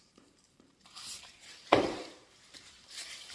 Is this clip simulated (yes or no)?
yes